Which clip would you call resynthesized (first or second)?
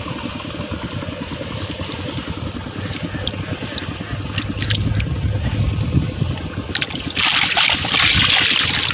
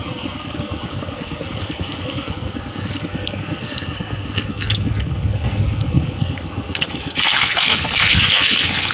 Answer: second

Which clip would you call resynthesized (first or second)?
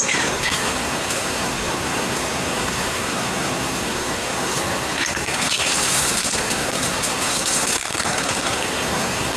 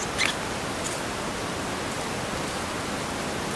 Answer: first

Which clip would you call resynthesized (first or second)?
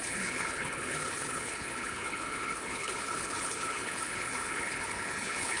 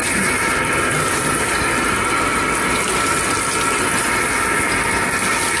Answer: first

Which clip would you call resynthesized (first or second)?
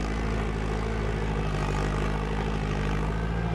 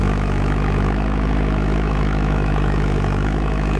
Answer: second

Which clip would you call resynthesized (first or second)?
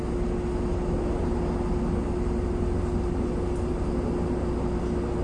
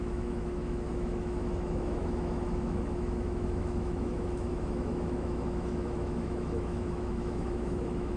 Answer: second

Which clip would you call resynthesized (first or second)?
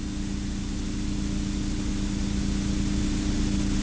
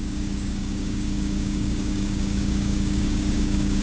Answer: second